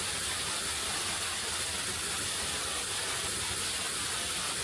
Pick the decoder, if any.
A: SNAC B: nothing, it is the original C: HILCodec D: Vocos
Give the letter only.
B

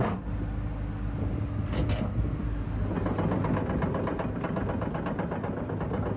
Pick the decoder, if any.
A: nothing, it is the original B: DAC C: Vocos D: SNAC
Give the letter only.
A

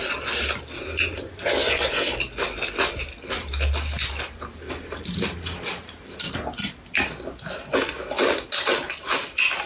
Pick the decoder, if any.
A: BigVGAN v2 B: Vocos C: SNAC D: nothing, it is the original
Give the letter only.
D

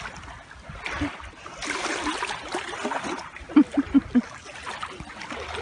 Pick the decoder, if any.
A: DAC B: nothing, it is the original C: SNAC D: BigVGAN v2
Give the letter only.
B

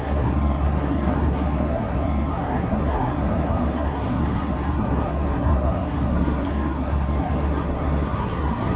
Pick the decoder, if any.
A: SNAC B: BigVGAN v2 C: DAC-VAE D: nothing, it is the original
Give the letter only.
A